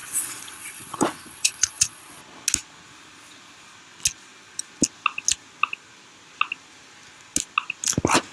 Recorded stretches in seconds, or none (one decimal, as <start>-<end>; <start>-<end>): 2.2-8.3